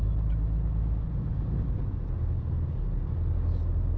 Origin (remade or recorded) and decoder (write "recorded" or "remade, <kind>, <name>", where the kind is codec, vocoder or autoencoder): recorded